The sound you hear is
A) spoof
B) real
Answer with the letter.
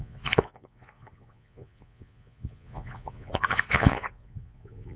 A